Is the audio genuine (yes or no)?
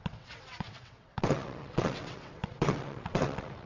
no